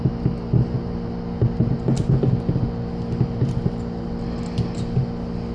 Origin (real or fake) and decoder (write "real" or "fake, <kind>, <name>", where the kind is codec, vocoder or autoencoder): real